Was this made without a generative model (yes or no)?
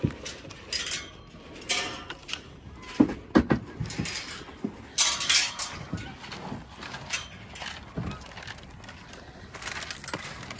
yes